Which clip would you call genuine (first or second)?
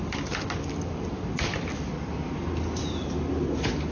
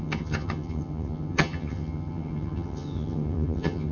first